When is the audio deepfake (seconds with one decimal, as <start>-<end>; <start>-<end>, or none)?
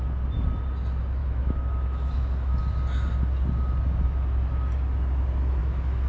1.2-2.6; 5.6-6.1